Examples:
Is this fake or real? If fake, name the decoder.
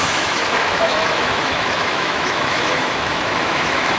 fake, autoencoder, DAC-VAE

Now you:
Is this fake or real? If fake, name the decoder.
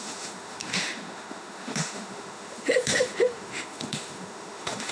fake, autoencoder, DAC-VAE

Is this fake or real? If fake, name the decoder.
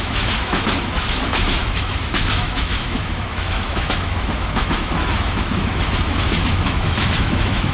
fake, autoencoder, DAC-VAE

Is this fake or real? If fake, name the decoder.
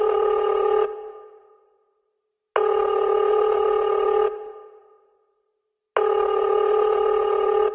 real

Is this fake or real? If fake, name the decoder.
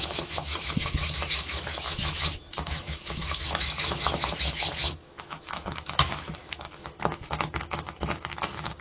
fake, autoencoder, DAC-VAE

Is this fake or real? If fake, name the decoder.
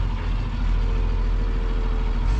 real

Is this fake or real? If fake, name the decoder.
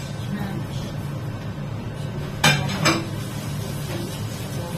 real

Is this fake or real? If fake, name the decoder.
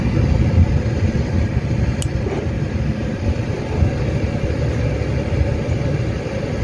real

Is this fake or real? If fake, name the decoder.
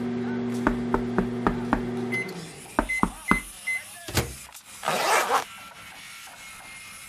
real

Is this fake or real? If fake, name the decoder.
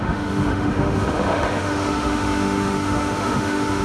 fake, autoencoder, DAC-VAE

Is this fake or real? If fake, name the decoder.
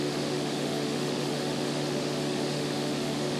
fake, autoencoder, DAC-VAE